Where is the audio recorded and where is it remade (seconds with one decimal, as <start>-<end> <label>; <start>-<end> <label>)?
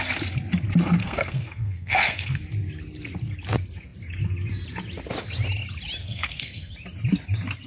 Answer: 0.0-1.0 recorded; 1.0-2.4 remade; 2.4-6.0 recorded; 6.0-6.7 remade; 6.7-7.7 recorded